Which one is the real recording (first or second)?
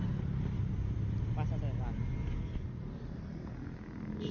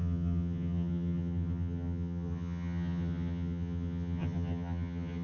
first